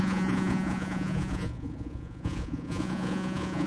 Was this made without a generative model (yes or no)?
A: no